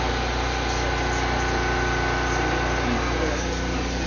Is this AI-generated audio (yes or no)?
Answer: no